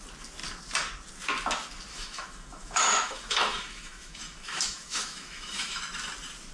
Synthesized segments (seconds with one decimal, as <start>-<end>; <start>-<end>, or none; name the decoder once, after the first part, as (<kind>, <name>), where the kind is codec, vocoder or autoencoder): 1.9-5.8 (autoencoder, DAC-VAE)